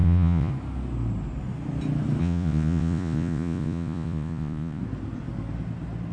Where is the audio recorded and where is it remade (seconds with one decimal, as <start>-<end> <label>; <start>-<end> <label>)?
0.0-0.5 remade; 0.5-2.2 recorded; 2.2-4.8 remade; 4.8-6.1 recorded